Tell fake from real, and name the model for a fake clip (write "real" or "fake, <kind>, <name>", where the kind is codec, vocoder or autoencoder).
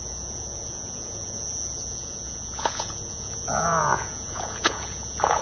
fake, vocoder, Vocos